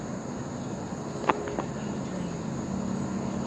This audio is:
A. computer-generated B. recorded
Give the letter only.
B